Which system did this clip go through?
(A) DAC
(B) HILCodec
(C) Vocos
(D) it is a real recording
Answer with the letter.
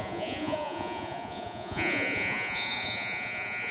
C